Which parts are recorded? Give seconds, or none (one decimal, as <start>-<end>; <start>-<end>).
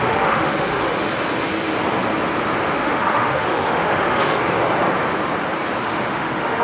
1.1-2.7; 4.4-5.8